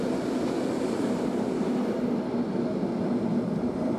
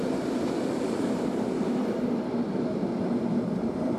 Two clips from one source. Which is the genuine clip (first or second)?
first